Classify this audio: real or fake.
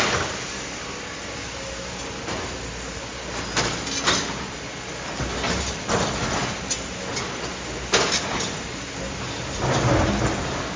real